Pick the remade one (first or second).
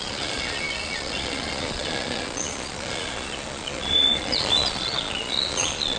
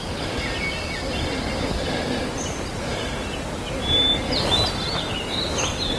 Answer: first